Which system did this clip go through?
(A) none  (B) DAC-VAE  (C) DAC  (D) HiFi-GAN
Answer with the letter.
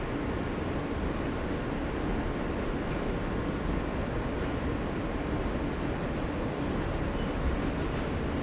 A